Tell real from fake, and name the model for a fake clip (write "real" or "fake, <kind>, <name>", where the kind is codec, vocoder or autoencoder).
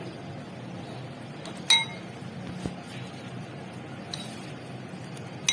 real